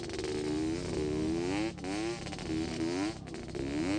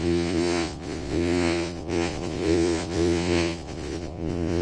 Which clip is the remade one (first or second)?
second